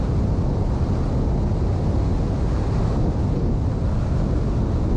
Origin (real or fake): real